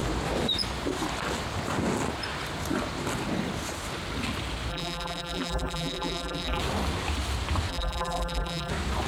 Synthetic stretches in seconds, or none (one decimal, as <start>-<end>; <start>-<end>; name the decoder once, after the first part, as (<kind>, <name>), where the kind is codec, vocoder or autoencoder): 4.7-6.6 (vocoder, BigVGAN v2); 7.7-8.7